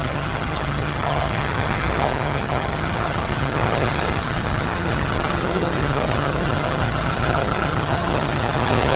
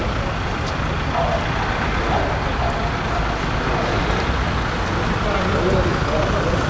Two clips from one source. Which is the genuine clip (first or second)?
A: second